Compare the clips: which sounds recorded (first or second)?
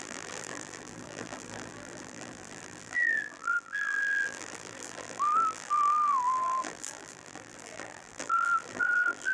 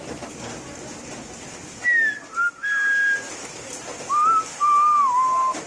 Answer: second